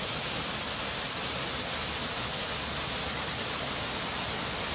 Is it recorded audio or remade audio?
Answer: recorded